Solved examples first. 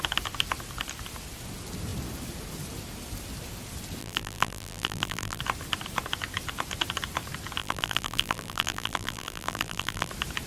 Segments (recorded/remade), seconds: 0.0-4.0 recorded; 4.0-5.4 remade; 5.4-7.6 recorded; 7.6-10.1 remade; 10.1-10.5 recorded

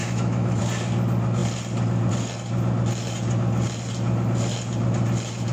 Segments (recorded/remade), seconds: 0.0-0.6 remade; 0.6-5.5 recorded

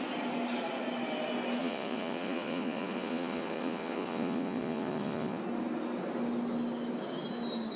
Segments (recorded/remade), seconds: 0.0-1.6 recorded; 1.6-5.4 remade; 5.4-7.8 recorded

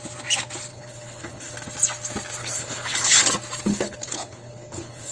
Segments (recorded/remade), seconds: 0.0-0.7 recorded; 0.7-1.5 remade; 1.5-2.4 recorded; 2.4-3.2 remade; 3.2-3.7 recorded; 3.7-5.1 remade

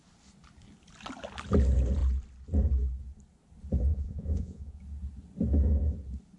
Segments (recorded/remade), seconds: 0.0-3.9 recorded; 3.9-4.8 remade; 4.8-6.4 recorded